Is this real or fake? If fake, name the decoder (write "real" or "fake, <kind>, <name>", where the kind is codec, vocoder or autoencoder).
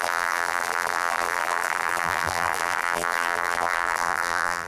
fake, vocoder, BigVGAN v2